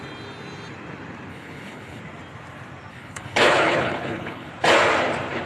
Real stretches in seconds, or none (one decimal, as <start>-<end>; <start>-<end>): 0.0-1.3; 2.0-2.9; 4.5-5.5